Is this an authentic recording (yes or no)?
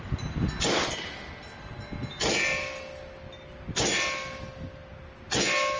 yes